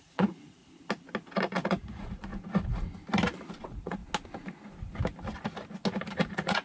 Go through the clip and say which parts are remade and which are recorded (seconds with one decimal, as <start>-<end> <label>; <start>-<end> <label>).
0.0-0.6 remade; 0.6-1.4 recorded; 1.4-2.3 remade; 2.3-3.5 recorded; 3.5-4.0 remade; 4.0-6.1 recorded; 6.1-6.6 remade